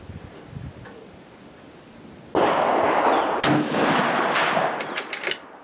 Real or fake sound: real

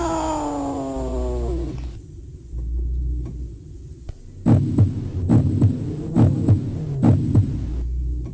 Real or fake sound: real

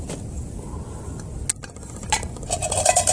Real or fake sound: real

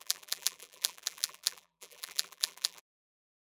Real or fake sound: fake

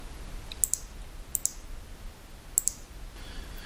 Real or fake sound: real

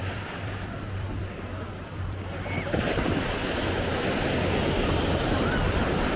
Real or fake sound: fake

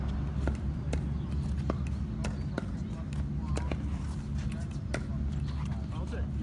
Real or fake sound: real